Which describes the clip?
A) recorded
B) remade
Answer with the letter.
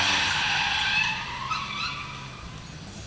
A